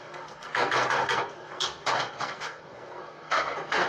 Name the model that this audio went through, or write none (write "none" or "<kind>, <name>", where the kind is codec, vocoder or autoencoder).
codec, SNAC